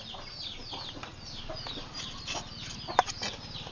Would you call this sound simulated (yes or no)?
no